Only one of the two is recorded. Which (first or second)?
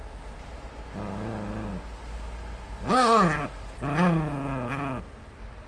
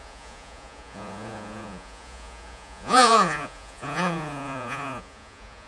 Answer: first